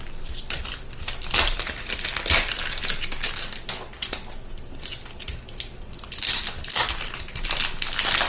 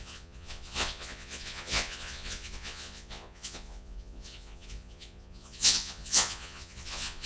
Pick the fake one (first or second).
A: second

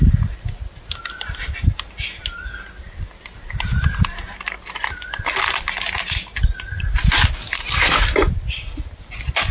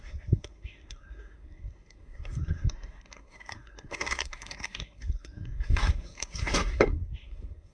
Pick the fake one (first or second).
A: second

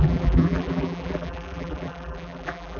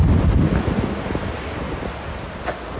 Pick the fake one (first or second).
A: first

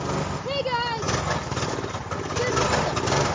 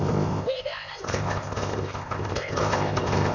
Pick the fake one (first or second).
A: second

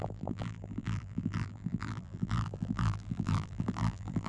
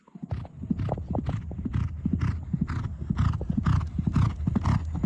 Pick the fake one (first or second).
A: first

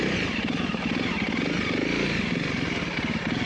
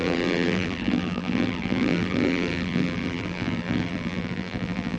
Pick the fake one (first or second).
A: second